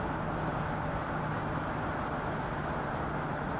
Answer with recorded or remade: recorded